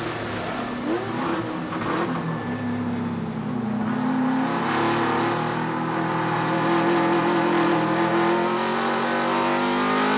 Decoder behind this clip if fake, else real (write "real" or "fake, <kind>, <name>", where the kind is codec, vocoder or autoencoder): real